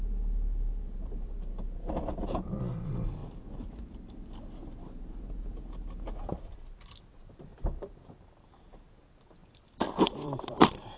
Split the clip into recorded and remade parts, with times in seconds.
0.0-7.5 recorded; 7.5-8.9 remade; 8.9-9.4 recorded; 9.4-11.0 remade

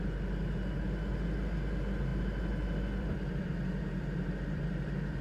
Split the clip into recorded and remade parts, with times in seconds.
0.0-2.1 recorded; 2.1-5.2 remade

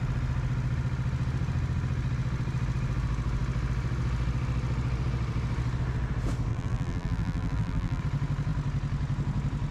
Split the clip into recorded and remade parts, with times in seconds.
0.0-6.5 recorded; 6.5-8.0 remade; 8.0-9.7 recorded

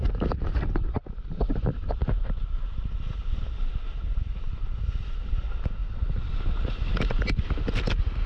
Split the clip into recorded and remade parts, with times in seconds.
0.0-8.3 recorded

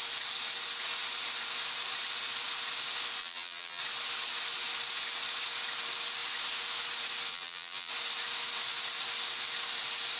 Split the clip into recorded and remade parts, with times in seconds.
0.0-3.2 recorded; 3.2-3.8 remade; 3.8-7.3 recorded; 7.3-7.9 remade; 7.9-10.2 recorded

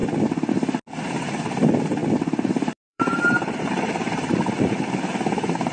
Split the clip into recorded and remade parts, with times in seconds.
0.0-2.0 recorded; 2.0-4.9 remade; 4.9-5.7 recorded

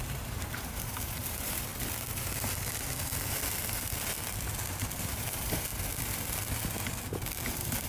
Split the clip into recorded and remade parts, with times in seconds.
0.0-1.7 remade; 1.7-5.0 recorded; 5.0-5.7 remade; 5.7-7.5 recorded; 7.5-7.9 remade

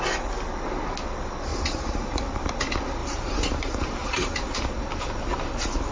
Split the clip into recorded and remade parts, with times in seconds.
0.0-1.5 recorded; 1.5-2.5 remade; 2.5-3.0 recorded; 3.0-4.7 remade; 4.7-5.9 recorded